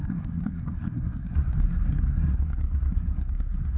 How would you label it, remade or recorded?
remade